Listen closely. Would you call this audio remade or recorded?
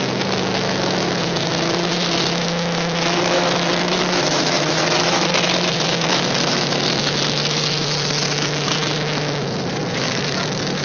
remade